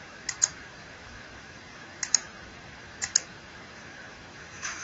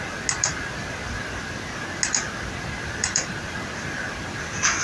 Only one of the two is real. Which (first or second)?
second